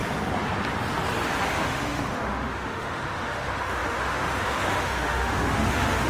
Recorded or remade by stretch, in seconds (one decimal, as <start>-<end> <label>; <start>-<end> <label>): 0.0-1.5 recorded; 1.5-6.1 remade